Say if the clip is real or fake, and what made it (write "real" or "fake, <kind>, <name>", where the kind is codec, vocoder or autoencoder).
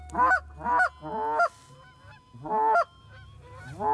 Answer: real